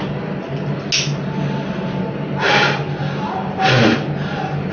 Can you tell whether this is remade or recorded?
recorded